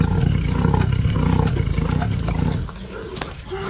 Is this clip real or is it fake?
real